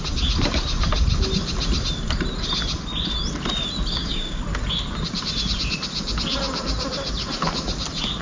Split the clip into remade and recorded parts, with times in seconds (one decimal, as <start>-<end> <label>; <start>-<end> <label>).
0.0-3.9 recorded; 3.9-4.4 remade; 4.4-8.2 recorded